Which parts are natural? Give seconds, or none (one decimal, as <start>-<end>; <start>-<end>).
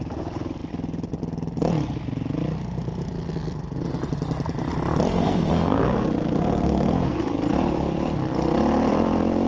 0.0-5.1; 7.2-9.5